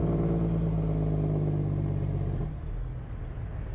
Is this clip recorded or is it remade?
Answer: recorded